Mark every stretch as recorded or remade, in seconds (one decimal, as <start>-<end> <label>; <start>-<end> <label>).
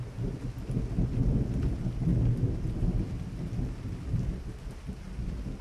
0.0-5.6 recorded